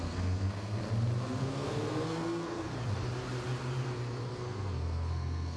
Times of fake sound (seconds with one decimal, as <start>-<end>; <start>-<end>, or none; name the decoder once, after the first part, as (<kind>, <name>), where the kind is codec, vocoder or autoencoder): 0.0-0.8 (codec, SNAC); 1.4-2.7; 4.3-5.6